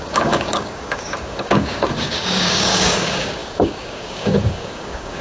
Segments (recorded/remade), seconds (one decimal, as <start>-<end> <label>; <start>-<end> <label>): 0.0-5.2 remade